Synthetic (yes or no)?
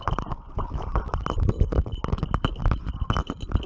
no